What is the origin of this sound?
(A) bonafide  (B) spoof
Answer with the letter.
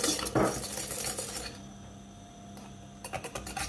A